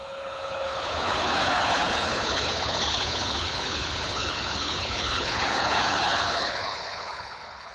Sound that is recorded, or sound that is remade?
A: remade